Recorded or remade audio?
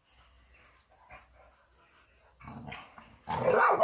recorded